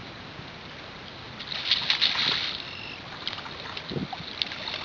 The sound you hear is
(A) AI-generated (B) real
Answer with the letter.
B